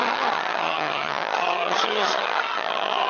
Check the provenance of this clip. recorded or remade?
remade